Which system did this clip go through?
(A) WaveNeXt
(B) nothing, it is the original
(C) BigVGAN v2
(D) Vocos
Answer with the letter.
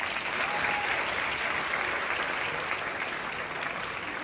B